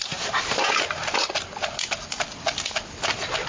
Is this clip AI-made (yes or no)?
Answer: no